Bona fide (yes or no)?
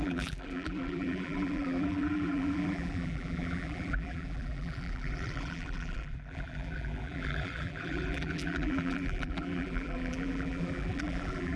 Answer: no